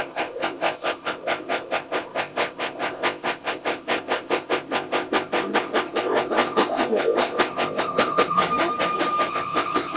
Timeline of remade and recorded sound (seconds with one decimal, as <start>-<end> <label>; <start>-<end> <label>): 0.0-8.4 remade; 8.4-9.3 recorded; 9.3-10.0 remade